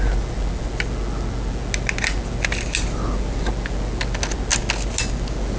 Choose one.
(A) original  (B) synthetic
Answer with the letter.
A